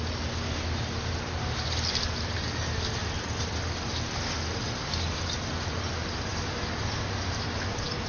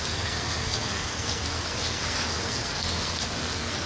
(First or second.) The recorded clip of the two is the first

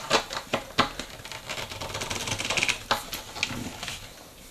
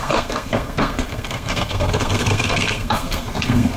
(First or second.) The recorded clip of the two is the first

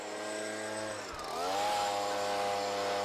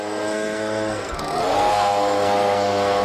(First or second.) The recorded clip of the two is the first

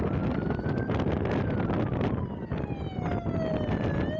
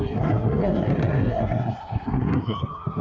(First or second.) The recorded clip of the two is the first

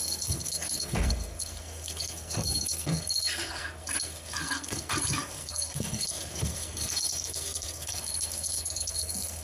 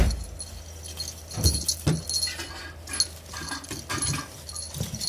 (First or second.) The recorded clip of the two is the second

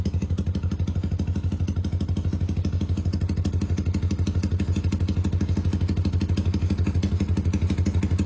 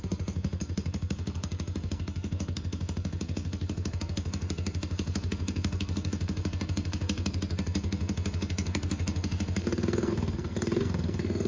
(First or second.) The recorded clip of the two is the first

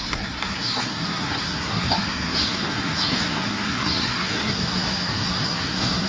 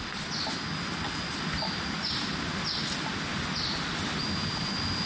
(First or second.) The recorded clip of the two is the second